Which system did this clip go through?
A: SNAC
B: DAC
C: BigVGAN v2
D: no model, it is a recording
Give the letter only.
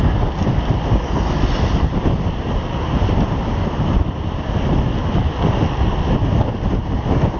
C